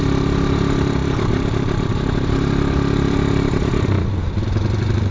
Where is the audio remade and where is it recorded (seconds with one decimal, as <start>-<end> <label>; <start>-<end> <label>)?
0.0-5.1 recorded